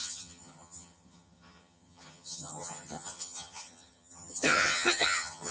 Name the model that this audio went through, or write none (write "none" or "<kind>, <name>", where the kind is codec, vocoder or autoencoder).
vocoder, HiFi-GAN